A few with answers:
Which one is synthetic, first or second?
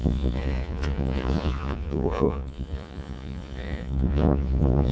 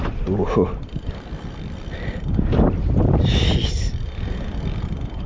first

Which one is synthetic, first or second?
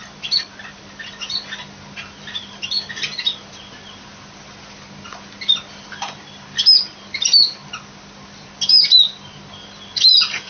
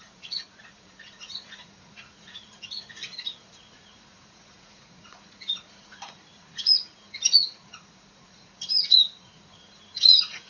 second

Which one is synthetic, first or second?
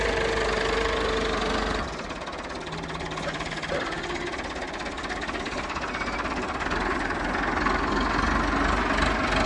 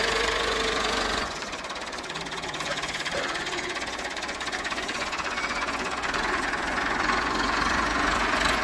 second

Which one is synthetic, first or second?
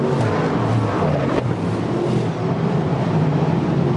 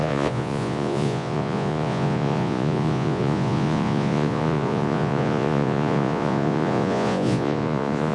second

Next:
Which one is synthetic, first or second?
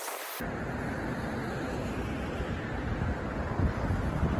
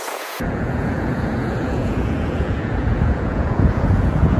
second